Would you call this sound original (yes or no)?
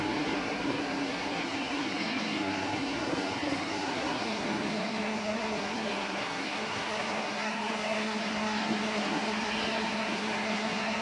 no